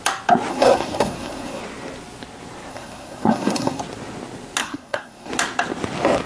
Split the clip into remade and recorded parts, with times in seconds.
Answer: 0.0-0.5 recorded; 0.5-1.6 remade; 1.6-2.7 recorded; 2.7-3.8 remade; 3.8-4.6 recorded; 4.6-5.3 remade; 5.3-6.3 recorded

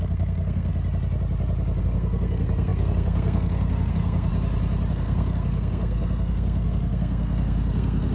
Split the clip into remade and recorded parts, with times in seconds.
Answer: 0.0-0.7 remade; 0.7-1.8 recorded; 1.8-4.3 remade; 4.3-4.9 recorded; 4.9-8.1 remade

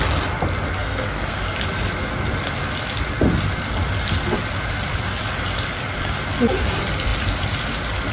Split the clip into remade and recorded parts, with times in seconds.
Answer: 0.0-0.8 recorded; 0.8-1.4 remade; 1.4-8.1 recorded

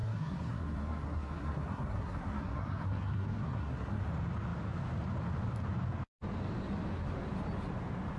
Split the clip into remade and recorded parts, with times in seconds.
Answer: 0.0-4.0 remade; 4.0-8.2 recorded

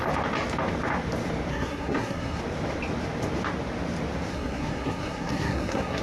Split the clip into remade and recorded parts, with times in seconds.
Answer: 0.0-1.5 recorded; 1.5-2.4 remade; 2.4-4.3 recorded; 4.3-6.0 remade

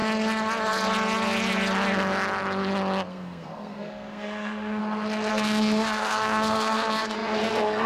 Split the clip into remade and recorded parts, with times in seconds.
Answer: 0.0-3.1 recorded; 3.1-4.8 remade; 4.8-5.3 recorded; 5.3-7.9 remade

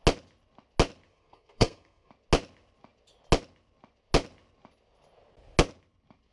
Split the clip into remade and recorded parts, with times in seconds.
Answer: 0.0-1.1 recorded; 1.1-2.1 remade; 2.1-6.3 recorded